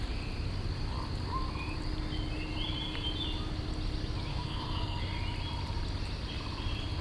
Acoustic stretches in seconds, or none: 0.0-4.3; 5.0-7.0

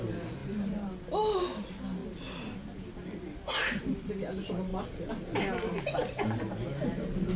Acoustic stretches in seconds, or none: 0.0-7.4